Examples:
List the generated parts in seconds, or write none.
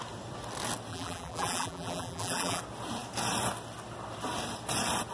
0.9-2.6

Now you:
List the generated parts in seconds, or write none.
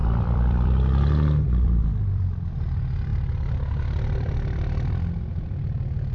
0.0-2.4; 3.1-5.6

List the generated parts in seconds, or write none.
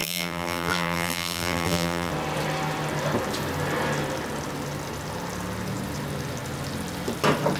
0.0-2.1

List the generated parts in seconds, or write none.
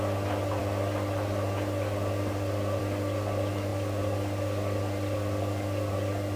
none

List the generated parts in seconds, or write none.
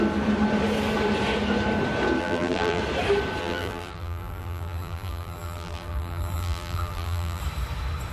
2.2-2.8; 3.4-7.4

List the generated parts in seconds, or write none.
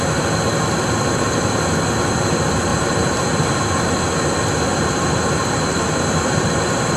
2.7-3.4; 4.7-6.6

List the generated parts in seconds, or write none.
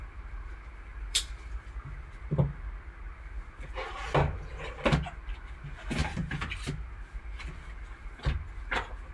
0.9-2.4; 6.0-7.7